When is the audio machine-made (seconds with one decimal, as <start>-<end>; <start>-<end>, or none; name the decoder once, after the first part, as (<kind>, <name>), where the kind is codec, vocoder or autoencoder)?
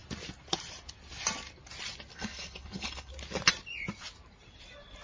2.1-3.1 (codec, HILCodec)